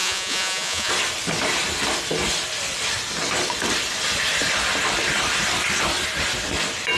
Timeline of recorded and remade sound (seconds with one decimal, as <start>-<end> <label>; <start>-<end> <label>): 0.0-0.9 remade; 0.9-7.0 recorded